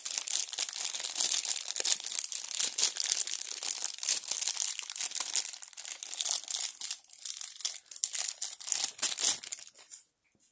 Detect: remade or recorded recorded